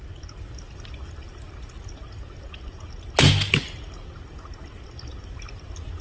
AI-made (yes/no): no